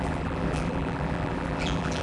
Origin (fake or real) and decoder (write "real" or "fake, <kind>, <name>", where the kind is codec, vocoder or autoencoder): fake, vocoder, BigVGAN v2